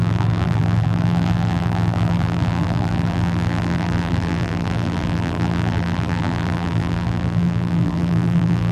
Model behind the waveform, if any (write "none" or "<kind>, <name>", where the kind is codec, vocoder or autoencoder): vocoder, BigVGAN v2